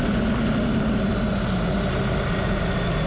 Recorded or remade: recorded